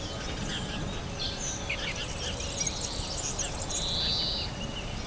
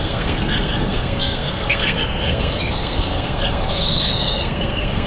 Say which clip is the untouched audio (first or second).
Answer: first